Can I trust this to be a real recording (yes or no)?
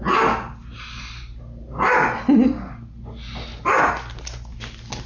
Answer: yes